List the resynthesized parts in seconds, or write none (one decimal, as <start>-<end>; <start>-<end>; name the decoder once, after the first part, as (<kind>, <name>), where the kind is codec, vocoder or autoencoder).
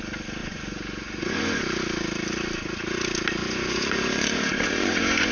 0.4-1.6 (vocoder, Vocos); 3.4-5.3